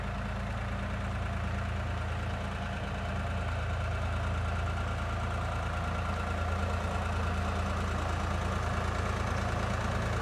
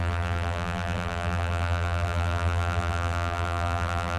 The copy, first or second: second